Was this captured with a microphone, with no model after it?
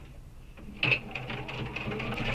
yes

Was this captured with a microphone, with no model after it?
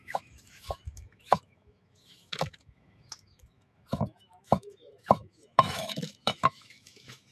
no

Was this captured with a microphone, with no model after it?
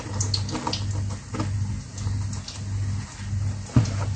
yes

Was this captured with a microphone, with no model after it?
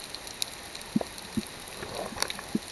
yes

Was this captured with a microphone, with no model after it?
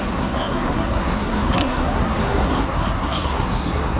no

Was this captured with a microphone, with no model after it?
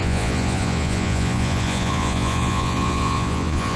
no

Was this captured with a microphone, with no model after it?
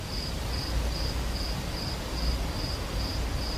yes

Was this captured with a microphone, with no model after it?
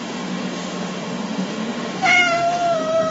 no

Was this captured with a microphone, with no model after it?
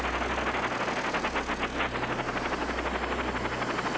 yes